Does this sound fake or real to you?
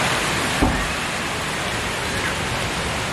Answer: real